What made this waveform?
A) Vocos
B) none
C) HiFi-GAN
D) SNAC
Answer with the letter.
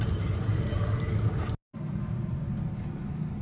B